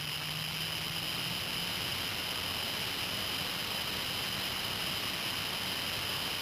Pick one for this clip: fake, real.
real